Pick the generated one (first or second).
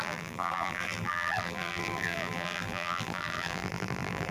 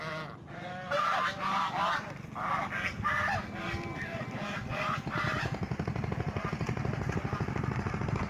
first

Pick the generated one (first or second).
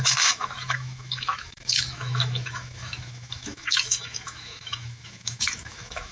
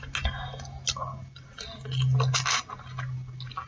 first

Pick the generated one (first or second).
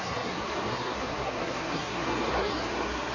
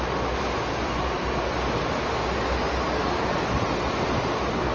first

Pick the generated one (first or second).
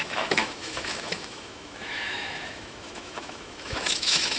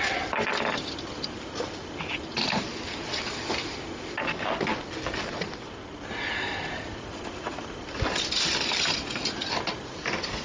first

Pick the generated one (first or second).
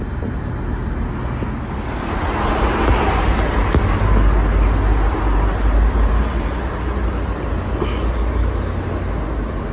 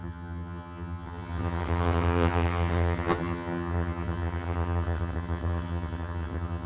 second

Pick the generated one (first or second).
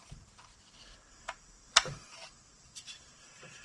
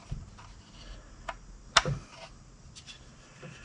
first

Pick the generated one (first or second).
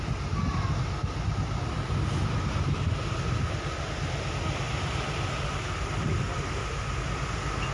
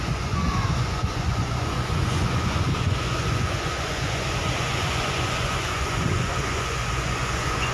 second